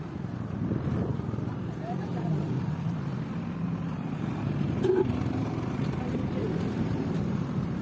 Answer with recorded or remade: remade